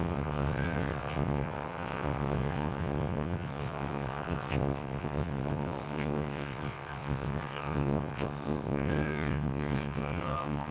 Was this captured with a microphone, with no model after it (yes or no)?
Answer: no